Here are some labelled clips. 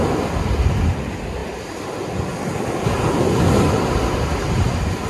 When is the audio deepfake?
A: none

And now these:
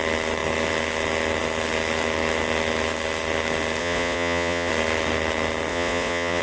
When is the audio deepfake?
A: 3.8-4.7 (vocoder, Vocos); 5.7-6.4

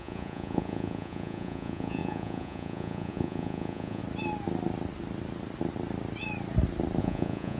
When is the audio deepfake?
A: 0.0-4.0 (vocoder, Vocos); 7.0-7.6